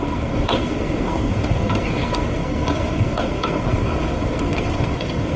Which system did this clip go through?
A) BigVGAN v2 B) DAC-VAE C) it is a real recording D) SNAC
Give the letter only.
D